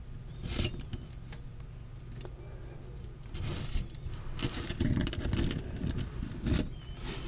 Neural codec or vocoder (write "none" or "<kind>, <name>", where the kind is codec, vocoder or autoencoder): none